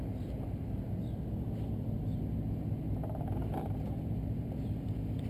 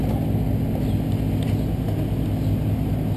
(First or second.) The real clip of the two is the second